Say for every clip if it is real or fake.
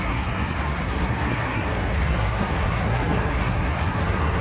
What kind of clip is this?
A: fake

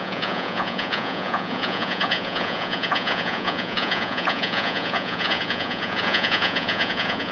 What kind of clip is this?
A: fake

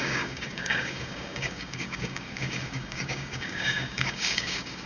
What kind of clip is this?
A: fake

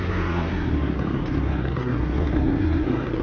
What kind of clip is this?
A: fake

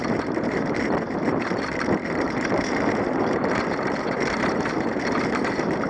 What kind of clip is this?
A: fake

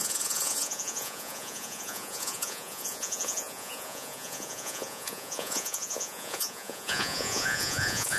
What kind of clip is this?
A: fake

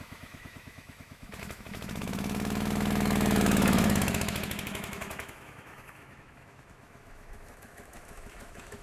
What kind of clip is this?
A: fake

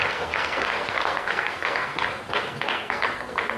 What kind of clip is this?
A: fake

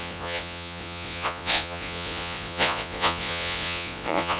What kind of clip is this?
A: fake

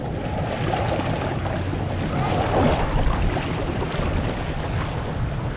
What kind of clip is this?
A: real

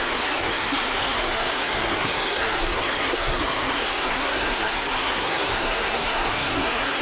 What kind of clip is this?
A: fake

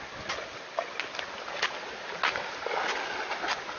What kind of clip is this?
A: real